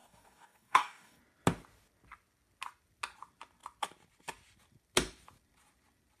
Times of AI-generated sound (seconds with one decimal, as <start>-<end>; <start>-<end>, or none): 0.0-1.2